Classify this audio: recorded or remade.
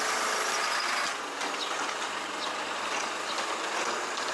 recorded